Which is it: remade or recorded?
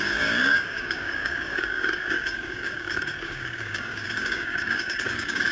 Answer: remade